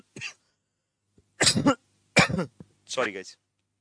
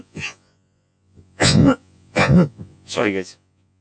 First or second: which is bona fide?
first